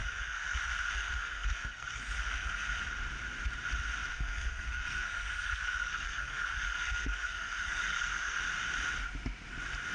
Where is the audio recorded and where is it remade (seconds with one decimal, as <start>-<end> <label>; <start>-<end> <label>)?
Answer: 0.0-2.8 remade; 2.8-4.1 recorded; 4.1-8.4 remade; 8.4-9.9 recorded